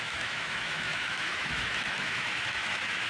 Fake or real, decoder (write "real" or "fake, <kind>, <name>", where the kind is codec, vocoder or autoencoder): fake, autoencoder, DAC-VAE